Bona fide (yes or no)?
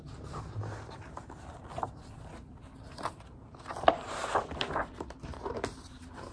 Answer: yes